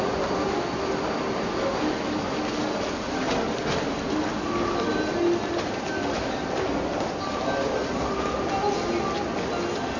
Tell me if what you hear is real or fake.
real